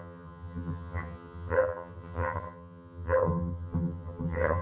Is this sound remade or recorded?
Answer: remade